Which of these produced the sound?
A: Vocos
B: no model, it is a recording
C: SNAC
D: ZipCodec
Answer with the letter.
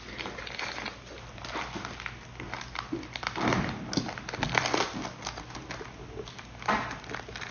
B